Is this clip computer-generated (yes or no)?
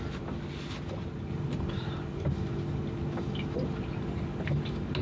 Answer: no